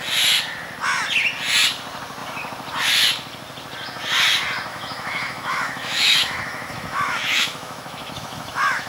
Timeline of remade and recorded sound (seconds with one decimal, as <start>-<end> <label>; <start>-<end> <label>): 0.0-4.7 recorded; 4.7-8.9 remade